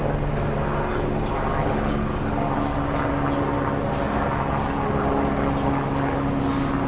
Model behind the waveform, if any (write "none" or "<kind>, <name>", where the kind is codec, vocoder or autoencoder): none